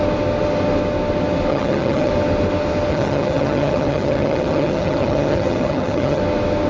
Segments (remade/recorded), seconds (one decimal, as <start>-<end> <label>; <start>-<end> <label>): 0.0-1.5 recorded; 1.5-2.1 remade; 2.1-2.9 recorded; 2.9-6.2 remade; 6.2-6.7 recorded